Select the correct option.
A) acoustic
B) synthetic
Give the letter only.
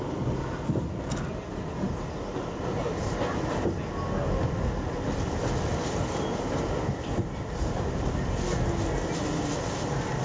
A